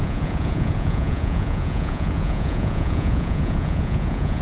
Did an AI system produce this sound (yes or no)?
yes